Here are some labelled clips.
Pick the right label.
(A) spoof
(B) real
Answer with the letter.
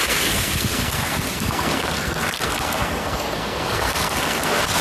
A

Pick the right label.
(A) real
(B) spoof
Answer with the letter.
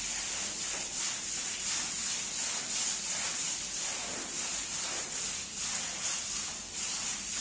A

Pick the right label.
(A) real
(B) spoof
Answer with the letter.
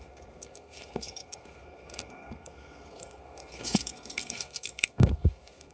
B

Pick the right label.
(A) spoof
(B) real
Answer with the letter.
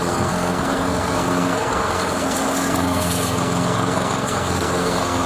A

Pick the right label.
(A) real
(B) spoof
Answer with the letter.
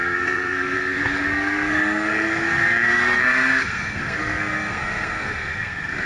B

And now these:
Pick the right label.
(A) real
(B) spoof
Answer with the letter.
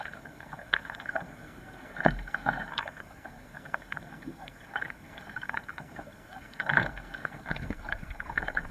B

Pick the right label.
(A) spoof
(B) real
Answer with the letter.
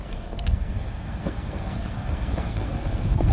A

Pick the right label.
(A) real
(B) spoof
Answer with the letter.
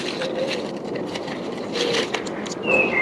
A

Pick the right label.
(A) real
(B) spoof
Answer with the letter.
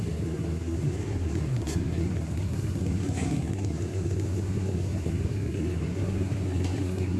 B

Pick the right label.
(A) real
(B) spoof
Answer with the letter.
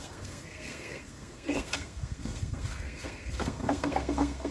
B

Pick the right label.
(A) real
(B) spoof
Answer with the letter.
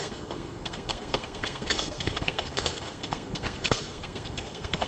B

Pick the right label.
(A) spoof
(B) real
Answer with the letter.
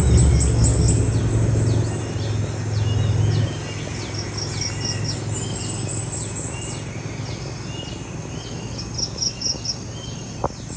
B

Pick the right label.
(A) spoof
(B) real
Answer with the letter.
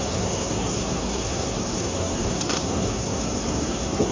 A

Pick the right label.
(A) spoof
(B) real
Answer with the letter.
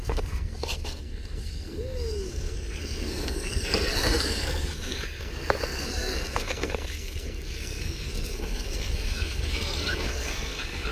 A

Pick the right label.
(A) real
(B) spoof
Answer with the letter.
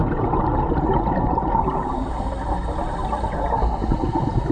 A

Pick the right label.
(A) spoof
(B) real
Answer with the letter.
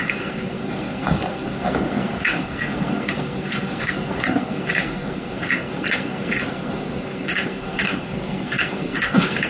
A